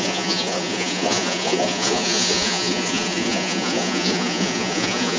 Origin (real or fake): fake